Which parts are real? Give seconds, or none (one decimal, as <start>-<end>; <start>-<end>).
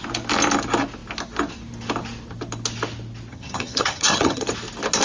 0.0-3.3; 4.5-5.0